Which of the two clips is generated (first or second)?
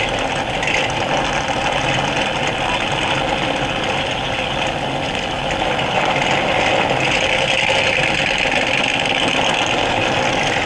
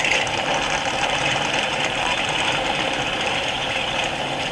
second